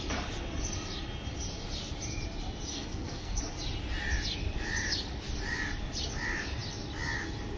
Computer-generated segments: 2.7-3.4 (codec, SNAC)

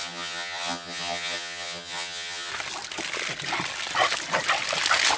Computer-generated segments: 0.0-2.5 (vocoder, HiFi-GAN)

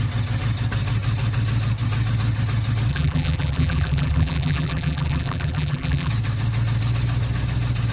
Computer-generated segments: 2.9-6.1 (vocoder, BigVGAN v2)

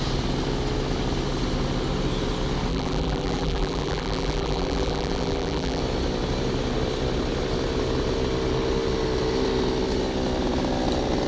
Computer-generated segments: 2.7-5.8 (vocoder, BigVGAN v2)

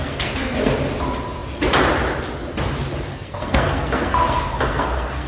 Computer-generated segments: 0.0-0.7 (codec, SNAC); 3.1-5.3

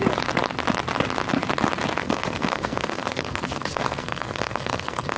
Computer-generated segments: 2.0-5.2 (codec, SNAC)